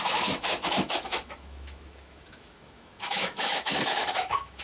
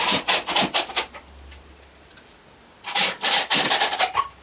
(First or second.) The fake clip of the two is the first